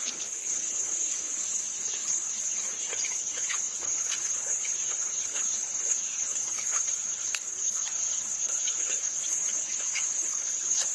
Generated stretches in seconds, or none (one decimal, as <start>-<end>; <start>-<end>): 0.0-10.9